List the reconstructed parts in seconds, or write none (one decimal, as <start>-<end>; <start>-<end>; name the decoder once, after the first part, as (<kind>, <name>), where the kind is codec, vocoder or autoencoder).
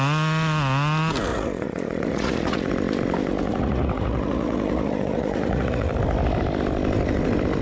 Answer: 1.3-2.7 (vocoder, Vocos); 3.3-5.9